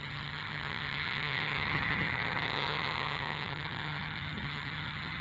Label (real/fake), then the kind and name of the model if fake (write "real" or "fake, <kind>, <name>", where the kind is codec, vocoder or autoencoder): fake, vocoder, HiFi-GAN